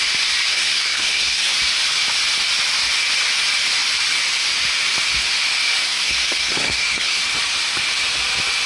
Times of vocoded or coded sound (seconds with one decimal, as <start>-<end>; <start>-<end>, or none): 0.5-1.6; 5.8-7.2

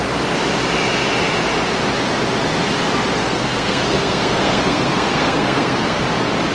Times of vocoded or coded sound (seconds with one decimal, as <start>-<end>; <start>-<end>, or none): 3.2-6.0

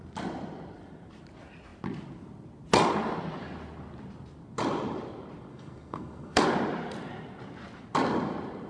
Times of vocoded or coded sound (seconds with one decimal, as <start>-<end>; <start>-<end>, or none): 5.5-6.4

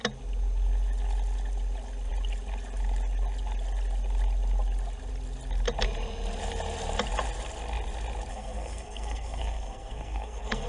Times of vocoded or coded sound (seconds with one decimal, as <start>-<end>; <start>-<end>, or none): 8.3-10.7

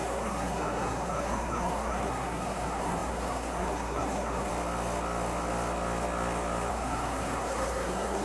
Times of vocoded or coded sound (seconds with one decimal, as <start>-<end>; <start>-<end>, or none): 0.0-4.5; 6.7-8.2

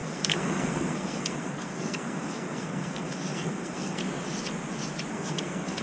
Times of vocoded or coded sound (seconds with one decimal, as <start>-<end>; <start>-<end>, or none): 0.0-4.0; 5.1-5.8

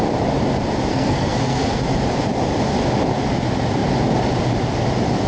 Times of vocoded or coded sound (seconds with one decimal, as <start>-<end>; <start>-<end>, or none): 0.9-1.8